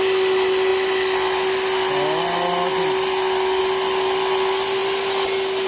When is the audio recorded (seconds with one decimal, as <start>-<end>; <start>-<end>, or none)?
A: 0.0-5.7